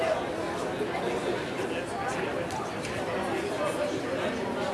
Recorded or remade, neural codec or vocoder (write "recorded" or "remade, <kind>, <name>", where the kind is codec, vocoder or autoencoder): recorded